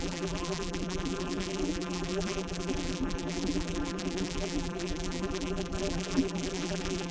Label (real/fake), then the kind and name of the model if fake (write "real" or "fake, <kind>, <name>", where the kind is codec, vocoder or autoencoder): fake, vocoder, BigVGAN v2